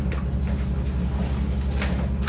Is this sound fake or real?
real